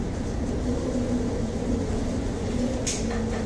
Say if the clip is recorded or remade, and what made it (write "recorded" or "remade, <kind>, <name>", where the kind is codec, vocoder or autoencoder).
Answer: recorded